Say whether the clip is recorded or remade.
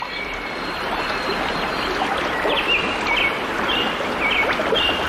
recorded